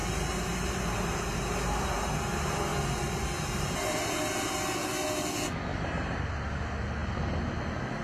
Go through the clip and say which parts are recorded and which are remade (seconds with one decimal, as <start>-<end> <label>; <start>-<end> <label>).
0.0-2.1 remade; 2.1-2.7 recorded; 2.7-4.2 remade; 4.2-5.7 recorded; 5.7-6.2 remade; 6.2-8.0 recorded